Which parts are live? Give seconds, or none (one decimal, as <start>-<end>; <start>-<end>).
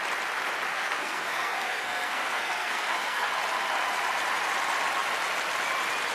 0.0-0.7; 3.3-6.1